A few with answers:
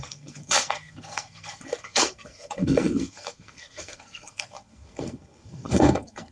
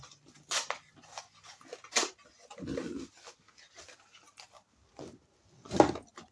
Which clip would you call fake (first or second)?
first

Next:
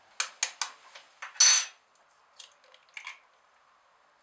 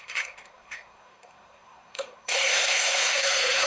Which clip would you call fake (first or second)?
second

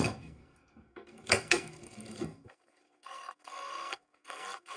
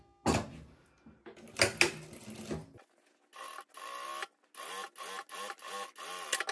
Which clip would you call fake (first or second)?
first